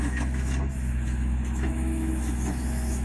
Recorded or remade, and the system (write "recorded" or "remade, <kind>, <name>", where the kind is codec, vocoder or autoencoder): remade, autoencoder, DAC-VAE